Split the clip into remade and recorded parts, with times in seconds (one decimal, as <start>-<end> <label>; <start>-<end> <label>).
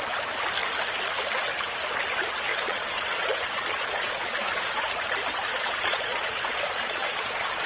0.0-2.5 recorded; 2.5-4.9 remade; 4.9-5.5 recorded; 5.5-7.7 remade